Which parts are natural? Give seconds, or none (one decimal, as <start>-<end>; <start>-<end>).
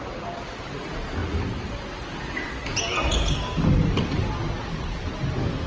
0.0-5.7